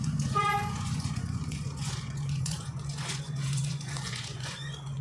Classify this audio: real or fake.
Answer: fake